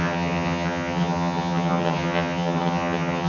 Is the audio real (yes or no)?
no